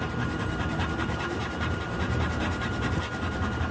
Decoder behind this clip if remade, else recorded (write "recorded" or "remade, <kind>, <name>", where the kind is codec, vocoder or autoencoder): remade, vocoder, BigVGAN v2